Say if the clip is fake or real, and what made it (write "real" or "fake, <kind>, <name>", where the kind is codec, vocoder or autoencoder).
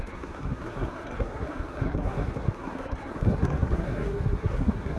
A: fake, codec, SNAC